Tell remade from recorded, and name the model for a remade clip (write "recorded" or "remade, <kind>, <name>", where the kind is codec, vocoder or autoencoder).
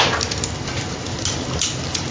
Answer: recorded